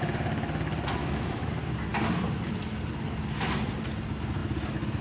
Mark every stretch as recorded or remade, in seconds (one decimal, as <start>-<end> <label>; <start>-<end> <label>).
0.0-1.0 recorded; 1.0-1.5 remade; 1.5-5.0 recorded

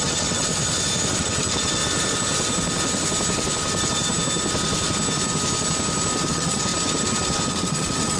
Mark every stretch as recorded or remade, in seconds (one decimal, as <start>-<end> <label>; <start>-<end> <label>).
0.0-0.5 remade; 0.5-1.2 recorded; 1.2-1.8 remade; 1.8-6.3 recorded; 6.3-6.7 remade; 6.7-7.5 recorded; 7.5-8.2 remade

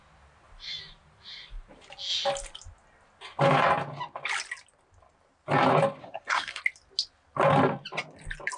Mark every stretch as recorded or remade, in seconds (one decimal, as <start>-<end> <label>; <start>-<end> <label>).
0.0-6.0 recorded; 6.0-6.6 remade; 6.6-8.6 recorded